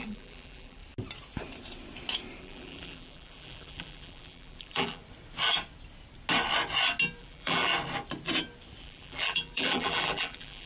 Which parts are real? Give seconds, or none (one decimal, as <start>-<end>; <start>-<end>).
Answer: 0.8-2.4; 5.0-7.2; 7.7-8.8